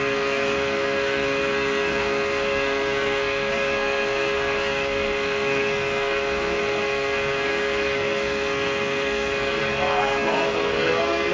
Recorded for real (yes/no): no